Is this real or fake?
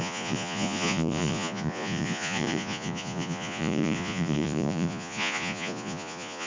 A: fake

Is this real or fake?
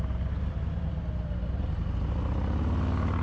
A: real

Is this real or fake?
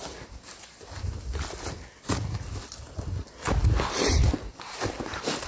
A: real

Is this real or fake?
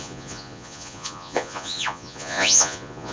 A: fake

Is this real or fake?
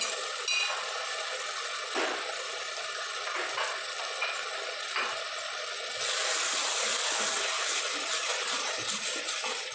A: real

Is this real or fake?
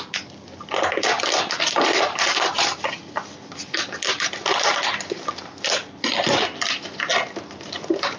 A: real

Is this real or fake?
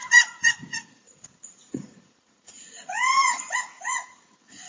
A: fake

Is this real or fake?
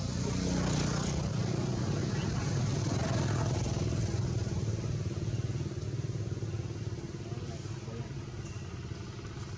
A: real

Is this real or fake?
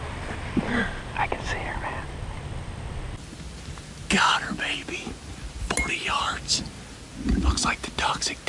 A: real